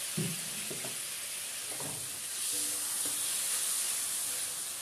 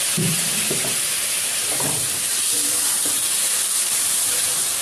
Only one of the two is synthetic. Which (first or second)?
second